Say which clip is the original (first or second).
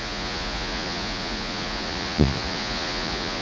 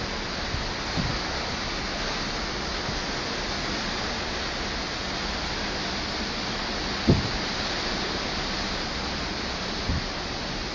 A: second